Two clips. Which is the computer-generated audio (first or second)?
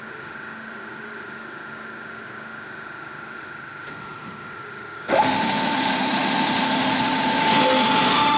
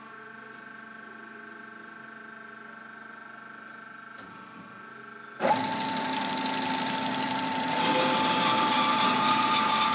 first